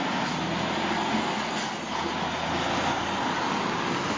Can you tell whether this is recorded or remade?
recorded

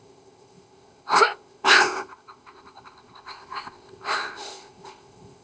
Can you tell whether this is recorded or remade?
remade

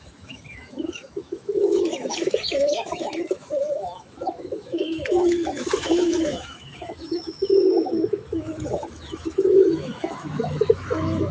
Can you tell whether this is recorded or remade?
remade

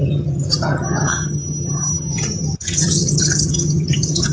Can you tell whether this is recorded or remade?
remade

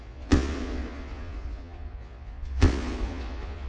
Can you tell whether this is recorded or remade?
remade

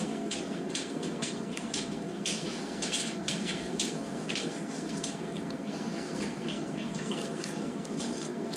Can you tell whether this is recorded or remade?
remade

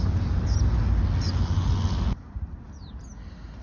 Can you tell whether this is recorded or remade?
recorded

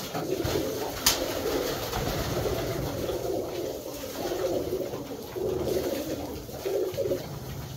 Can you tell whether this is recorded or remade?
recorded